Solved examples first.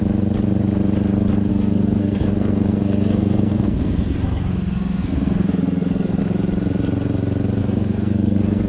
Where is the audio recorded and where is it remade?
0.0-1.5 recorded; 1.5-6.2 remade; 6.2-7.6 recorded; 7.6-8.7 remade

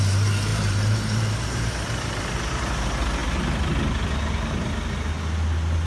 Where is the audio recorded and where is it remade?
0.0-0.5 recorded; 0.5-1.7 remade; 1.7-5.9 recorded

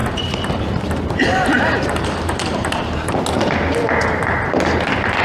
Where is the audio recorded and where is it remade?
0.0-3.1 remade; 3.1-5.2 recorded

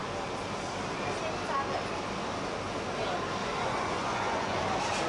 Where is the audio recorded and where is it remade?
0.0-3.4 recorded; 3.4-4.6 remade; 4.6-5.1 recorded

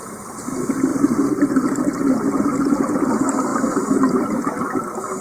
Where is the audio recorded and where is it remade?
0.0-5.2 recorded

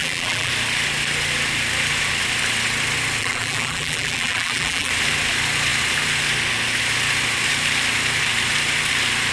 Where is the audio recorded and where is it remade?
0.0-0.5 remade; 0.5-3.2 recorded; 3.2-4.9 remade; 4.9-9.3 recorded

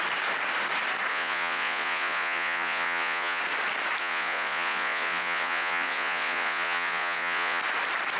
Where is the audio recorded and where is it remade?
0.0-1.1 recorded; 1.1-3.4 remade; 3.4-4.0 recorded; 4.0-7.6 remade; 7.6-8.2 recorded